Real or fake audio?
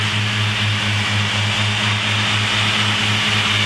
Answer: real